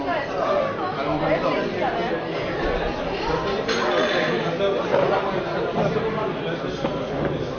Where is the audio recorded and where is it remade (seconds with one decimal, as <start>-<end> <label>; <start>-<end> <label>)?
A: 0.0-7.6 recorded